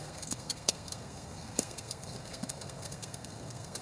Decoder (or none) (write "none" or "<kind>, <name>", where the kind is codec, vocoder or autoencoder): codec, SNAC